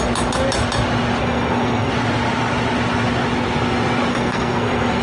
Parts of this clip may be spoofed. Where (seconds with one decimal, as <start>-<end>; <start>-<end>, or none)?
1.2-1.9; 4.1-5.0